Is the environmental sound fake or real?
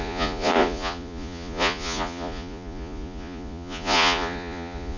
fake